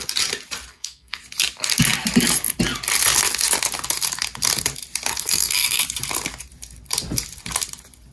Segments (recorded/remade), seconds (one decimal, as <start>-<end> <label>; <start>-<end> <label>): 0.0-0.7 recorded; 0.7-1.2 remade; 1.2-5.1 recorded; 5.1-5.8 remade; 5.8-8.1 recorded